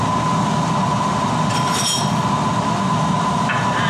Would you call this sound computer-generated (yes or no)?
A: no